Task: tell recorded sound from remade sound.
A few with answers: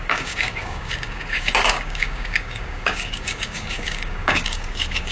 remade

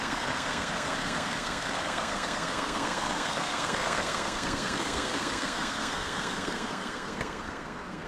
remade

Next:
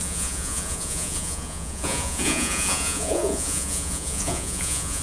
remade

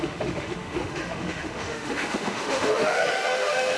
remade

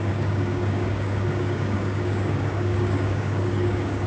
remade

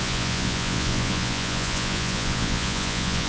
remade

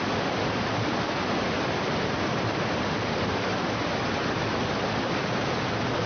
remade